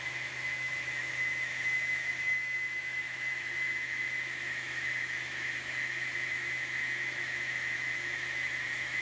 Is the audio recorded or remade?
remade